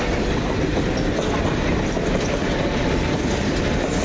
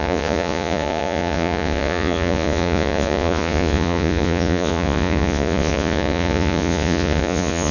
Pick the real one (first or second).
first